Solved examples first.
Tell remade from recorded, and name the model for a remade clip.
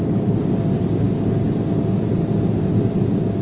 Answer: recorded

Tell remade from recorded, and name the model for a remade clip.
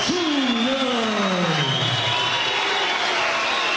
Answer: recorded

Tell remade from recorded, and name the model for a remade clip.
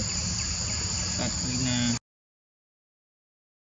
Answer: recorded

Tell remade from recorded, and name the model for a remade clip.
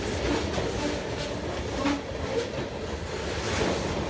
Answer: recorded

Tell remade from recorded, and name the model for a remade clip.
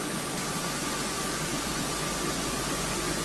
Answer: remade, vocoder, Vocos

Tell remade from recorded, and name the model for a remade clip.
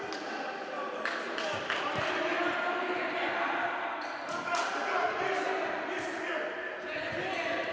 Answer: recorded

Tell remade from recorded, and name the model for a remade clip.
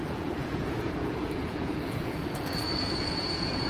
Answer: remade, vocoder, Vocos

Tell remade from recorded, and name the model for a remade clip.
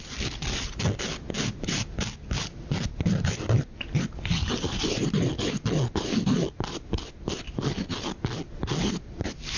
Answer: recorded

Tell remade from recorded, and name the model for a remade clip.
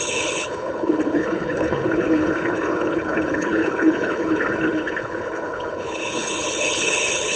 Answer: remade, codec, HILCodec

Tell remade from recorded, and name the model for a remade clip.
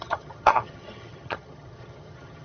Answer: remade, vocoder, HiFi-GAN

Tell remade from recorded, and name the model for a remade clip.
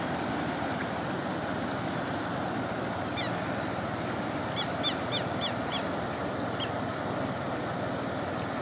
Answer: recorded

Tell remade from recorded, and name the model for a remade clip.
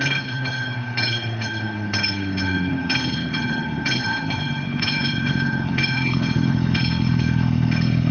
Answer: remade, codec, HILCodec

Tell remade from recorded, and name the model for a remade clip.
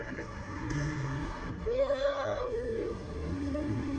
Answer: remade, codec, SNAC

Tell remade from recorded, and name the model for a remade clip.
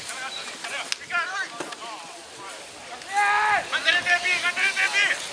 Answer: recorded